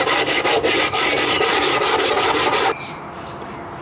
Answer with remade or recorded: recorded